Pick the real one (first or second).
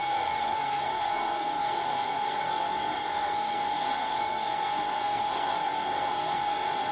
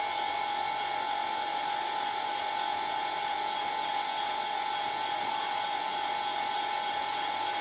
second